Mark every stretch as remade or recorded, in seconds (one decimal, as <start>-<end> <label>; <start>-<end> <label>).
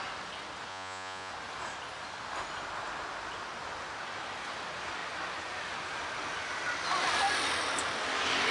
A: 0.0-0.7 recorded; 0.7-1.3 remade; 1.3-8.5 recorded